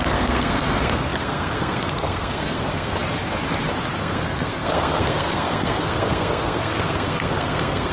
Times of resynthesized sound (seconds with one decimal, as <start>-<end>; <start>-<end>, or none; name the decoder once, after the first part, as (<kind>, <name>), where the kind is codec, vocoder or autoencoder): 0.0-3.0 (codec, SNAC); 4.0-7.9